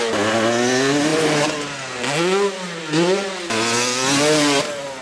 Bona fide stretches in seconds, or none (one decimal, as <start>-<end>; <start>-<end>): 0.0-5.0